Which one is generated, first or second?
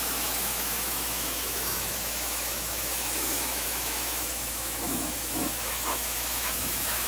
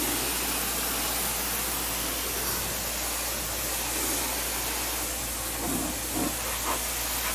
first